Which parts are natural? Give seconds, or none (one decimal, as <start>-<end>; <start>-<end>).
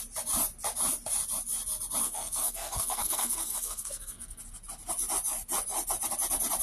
0.0-2.0; 4.4-6.6